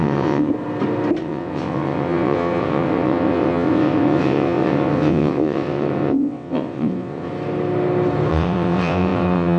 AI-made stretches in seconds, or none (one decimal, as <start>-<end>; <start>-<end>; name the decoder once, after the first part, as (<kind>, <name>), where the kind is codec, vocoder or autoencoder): 0.0-0.5 (vocoder, WaveNeXt); 1.2-7.3; 8.3-9.6